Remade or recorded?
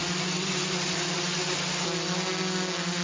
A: recorded